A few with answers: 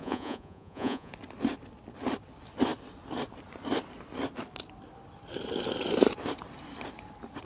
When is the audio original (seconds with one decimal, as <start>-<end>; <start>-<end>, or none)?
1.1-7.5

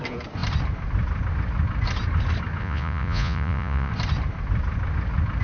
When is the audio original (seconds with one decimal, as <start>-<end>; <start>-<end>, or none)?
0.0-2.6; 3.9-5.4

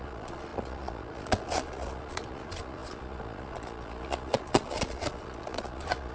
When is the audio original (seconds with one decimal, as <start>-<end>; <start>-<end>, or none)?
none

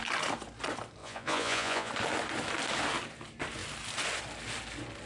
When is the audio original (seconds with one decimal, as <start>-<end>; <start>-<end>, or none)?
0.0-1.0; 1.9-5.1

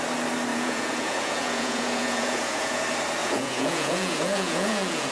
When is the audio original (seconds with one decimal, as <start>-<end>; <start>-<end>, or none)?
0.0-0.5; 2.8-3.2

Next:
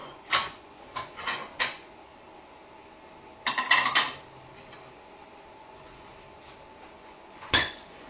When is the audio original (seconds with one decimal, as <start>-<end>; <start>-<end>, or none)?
2.1-5.6; 6.1-6.9

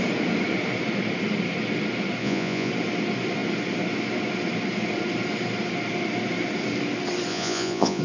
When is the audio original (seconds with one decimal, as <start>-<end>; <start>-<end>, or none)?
0.0-2.2; 2.7-7.3

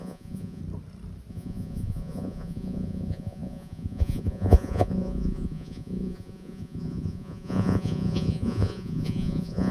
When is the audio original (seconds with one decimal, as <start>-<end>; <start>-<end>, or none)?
0.6-1.3